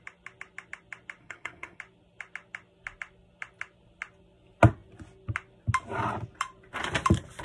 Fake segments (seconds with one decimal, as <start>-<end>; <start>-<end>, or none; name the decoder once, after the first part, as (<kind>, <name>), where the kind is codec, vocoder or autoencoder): 1.2-1.8 (codec, SNAC)